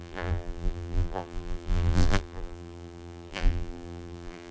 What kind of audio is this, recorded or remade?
remade